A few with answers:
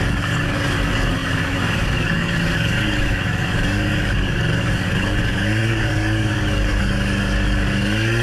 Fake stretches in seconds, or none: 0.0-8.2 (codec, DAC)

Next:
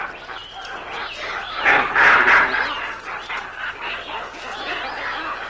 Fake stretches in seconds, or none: none

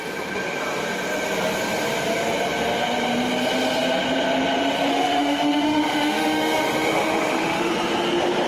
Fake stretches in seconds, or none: 4.9-7.7 (autoencoder, DAC-VAE)

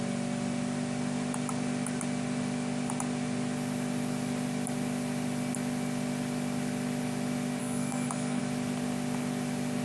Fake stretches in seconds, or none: 7.6-8.4 (codec, SNAC)

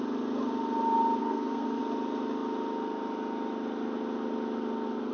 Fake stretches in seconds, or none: 1.2-1.8 (codec, SNAC)